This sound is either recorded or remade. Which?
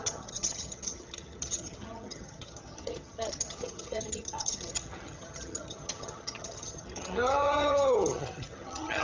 remade